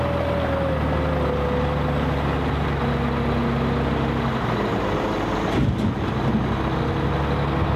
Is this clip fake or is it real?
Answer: real